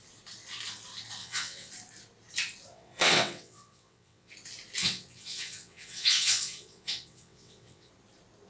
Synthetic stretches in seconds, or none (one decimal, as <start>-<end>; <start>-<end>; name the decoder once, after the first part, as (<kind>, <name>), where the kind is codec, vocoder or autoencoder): 1.2-1.7 (vocoder, WaveNeXt); 2.7-4.3; 4.8-7.9